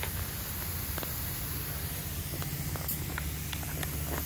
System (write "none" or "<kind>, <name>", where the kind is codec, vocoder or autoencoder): none